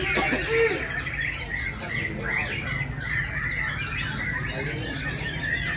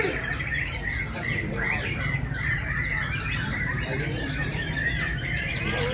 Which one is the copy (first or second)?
second